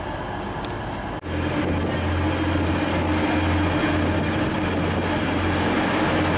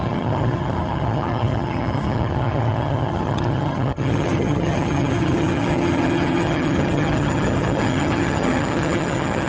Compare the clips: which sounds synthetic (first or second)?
second